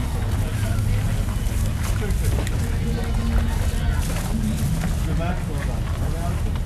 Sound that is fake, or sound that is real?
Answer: real